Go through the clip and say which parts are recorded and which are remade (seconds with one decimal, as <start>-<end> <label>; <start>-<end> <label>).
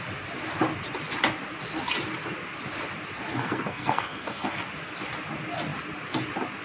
0.0-3.3 recorded; 3.3-4.6 remade; 4.6-6.6 recorded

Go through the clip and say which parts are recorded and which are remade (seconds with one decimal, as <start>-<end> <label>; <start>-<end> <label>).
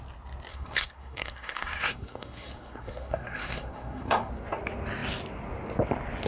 0.0-0.5 recorded; 0.5-4.3 remade; 4.3-6.3 recorded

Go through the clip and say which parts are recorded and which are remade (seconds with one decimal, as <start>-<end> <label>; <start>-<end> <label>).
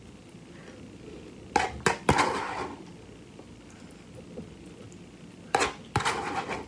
0.0-6.7 recorded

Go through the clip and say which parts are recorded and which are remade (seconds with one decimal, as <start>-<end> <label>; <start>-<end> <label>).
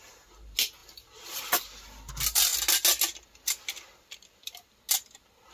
0.0-5.5 recorded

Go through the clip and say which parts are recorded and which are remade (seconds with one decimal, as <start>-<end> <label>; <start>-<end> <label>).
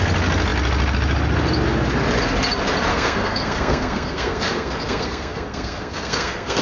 0.0-2.9 recorded; 2.9-6.6 remade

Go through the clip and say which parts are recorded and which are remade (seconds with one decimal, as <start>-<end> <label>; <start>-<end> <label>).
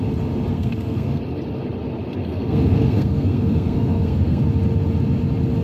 0.0-0.5 recorded; 0.5-1.2 remade; 1.2-2.2 recorded; 2.2-4.4 remade; 4.4-5.6 recorded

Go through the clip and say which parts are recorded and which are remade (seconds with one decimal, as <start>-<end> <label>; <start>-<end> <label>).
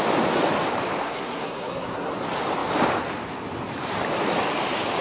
0.0-1.0 recorded; 1.0-2.1 remade; 2.1-5.0 recorded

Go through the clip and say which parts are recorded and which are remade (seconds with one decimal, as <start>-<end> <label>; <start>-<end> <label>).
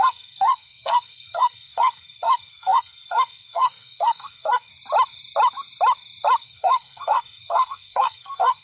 0.0-4.7 remade; 4.7-6.4 recorded; 6.4-8.6 remade